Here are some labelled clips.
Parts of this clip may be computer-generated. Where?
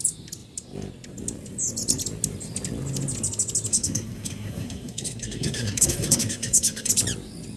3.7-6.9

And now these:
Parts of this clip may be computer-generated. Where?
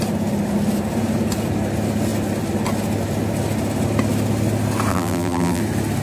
4.9-5.6